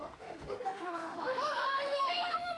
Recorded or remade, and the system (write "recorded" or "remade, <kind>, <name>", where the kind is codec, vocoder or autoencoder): remade, autoencoder, DAC-VAE